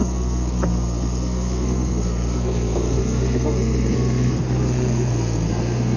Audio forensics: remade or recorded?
remade